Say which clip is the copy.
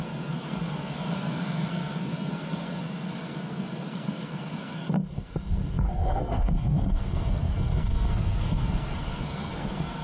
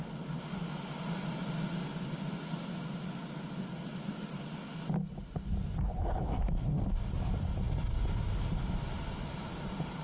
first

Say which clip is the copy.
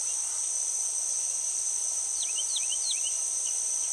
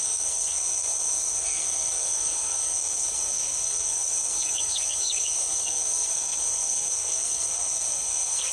second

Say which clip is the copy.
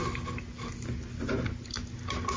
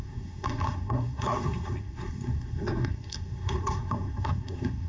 second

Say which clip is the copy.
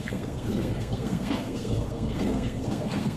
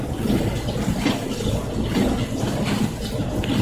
first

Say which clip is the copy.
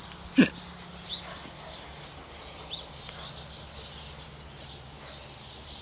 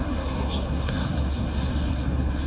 second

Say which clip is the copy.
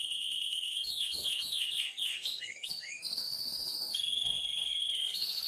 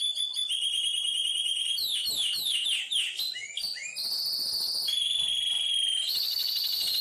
first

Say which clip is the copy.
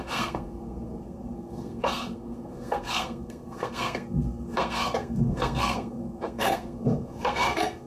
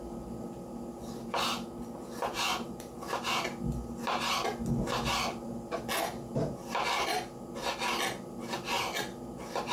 first